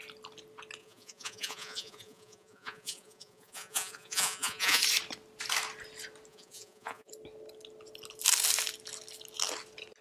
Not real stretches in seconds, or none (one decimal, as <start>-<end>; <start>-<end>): 0.8-4.8; 6.3-7.1